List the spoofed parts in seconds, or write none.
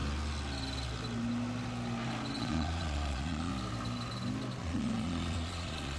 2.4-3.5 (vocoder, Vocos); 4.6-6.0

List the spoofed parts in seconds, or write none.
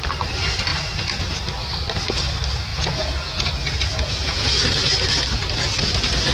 2.7-3.5 (vocoder, Vocos); 3.9-4.6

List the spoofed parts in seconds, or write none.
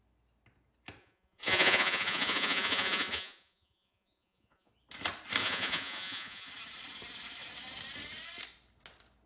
1.0-4.7 (vocoder, Vocos); 5.4-6.5